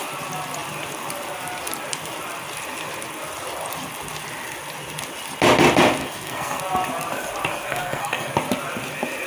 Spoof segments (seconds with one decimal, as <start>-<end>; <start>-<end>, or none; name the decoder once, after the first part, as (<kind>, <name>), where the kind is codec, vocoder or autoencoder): 6.0-6.6 (codec, SNAC); 7.5-8.3